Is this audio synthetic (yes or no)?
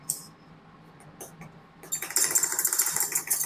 no